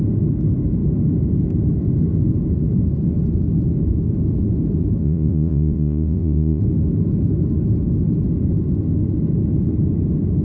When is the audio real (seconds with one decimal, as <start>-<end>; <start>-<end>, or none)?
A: 0.0-5.0; 6.6-10.4